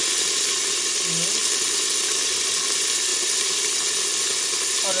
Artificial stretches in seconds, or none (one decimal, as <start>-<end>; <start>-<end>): 1.4-2.0; 3.1-3.8